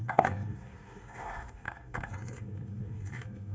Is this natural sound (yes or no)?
no